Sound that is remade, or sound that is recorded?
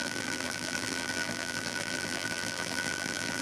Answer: remade